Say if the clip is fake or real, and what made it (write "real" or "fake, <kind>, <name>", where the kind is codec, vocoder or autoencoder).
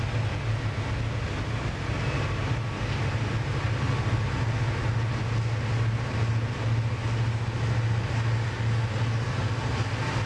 real